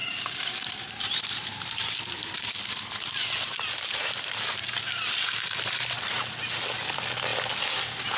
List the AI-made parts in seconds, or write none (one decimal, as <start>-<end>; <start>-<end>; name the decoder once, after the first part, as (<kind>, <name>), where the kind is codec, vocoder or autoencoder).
0.0-2.4 (vocoder, BigVGAN v2); 4.0-6.4